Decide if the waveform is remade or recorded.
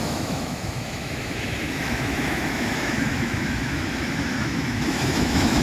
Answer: remade